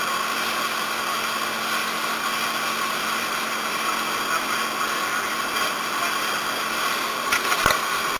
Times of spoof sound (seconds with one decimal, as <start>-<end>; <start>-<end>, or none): none